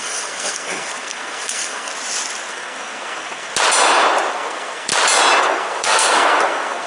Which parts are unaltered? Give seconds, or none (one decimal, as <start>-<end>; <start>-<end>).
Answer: 1.9-2.5; 3.5-4.3; 4.9-5.4